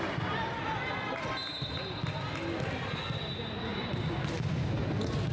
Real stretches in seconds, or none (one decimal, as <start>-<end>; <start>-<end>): 0.0-5.3